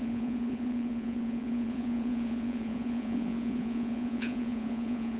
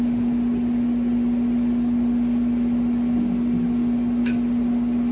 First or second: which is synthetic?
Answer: first